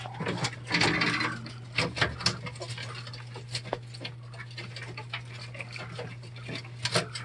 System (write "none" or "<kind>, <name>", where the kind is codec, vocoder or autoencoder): none